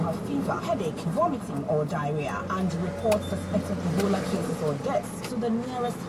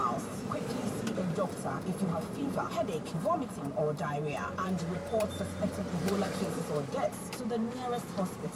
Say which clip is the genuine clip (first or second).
first